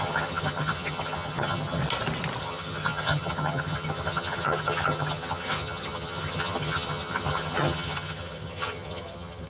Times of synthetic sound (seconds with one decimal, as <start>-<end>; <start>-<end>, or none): 0.0-1.8; 2.4-9.5

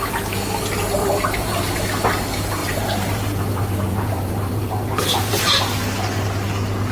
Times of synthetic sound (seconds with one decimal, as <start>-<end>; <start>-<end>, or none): 1.0-1.7; 2.6-5.4

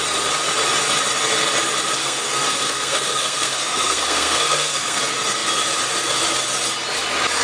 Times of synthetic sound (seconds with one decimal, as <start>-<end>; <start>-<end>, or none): 2.0-5.0

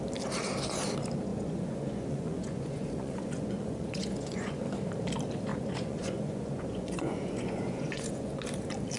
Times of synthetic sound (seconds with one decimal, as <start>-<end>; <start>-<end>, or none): 1.3-4.6; 5.5-8.4

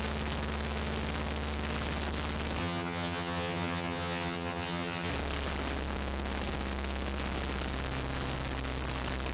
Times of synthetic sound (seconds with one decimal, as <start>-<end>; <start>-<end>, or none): 2.6-5.1

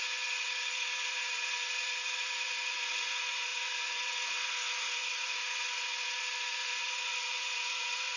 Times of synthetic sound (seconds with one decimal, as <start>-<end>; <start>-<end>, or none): 0.0-8.2

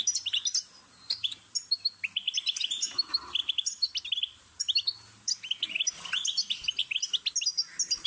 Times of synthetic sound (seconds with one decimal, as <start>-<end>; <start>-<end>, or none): none